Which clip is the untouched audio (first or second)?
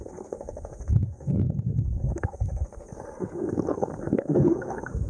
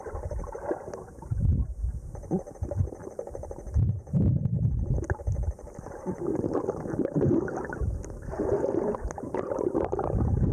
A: second